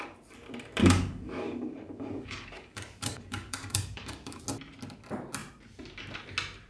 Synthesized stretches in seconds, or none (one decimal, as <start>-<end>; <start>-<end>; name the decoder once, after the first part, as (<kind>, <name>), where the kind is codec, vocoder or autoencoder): 0.8-4.4 (codec, DAC)